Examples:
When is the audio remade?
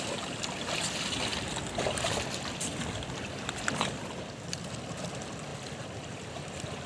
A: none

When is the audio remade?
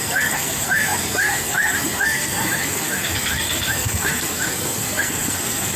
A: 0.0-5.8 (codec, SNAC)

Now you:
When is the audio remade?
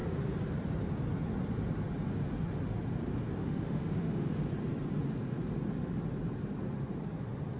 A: 3.4-4.3 (autoencoder, DAC-VAE)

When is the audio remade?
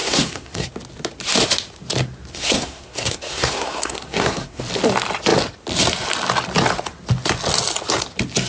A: 0.0-0.7 (codec, SNAC); 2.3-4.6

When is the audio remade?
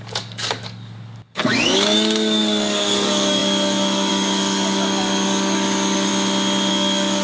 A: 0.0-6.1 (codec, DAC); 6.7-7.2